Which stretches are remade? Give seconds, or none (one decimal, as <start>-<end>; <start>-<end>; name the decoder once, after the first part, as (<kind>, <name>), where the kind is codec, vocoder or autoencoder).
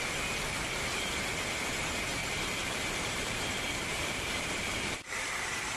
2.2-5.8 (vocoder, BigVGAN v2)